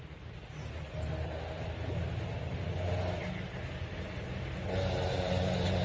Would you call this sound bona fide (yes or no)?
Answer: yes